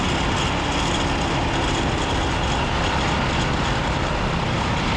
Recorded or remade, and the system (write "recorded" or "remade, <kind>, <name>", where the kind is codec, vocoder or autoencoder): recorded